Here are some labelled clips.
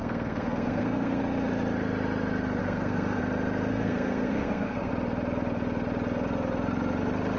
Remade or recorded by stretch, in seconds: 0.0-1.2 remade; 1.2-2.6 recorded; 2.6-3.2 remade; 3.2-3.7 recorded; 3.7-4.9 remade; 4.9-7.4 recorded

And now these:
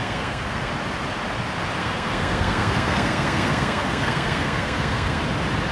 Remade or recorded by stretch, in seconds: 0.0-0.7 remade; 0.7-1.8 recorded; 1.8-5.2 remade; 5.2-5.7 recorded

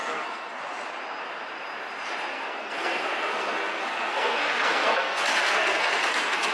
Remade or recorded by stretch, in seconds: 0.0-0.6 remade; 0.6-2.3 recorded; 2.3-6.5 remade